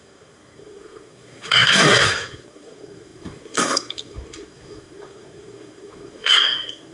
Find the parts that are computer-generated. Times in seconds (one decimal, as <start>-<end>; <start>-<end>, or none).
0.0-6.9

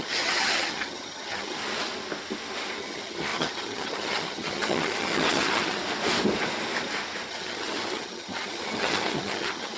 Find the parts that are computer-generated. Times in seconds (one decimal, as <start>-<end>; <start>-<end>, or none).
0.0-1.6; 2.8-5.8; 7.3-9.8